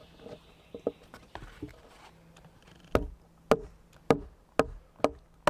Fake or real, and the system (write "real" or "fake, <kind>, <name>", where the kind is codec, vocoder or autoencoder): real